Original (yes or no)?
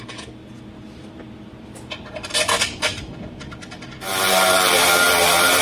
no